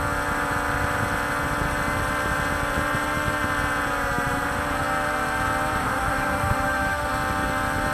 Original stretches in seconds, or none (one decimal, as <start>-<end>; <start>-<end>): 0.0-5.8; 7.1-7.9

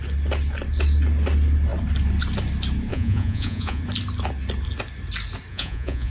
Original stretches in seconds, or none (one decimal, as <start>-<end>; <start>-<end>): 0.0-2.9; 3.8-5.5

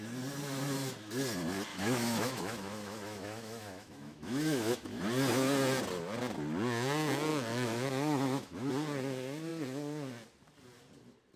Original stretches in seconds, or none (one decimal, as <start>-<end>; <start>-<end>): 0.0-1.7; 5.0-7.3; 8.7-11.4

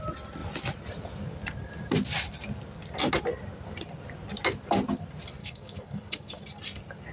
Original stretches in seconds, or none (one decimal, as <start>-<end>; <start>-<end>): 0.0-5.4; 6.4-7.1

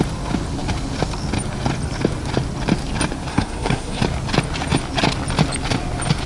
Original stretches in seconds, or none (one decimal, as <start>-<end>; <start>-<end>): 0.0-3.3; 4.0-6.3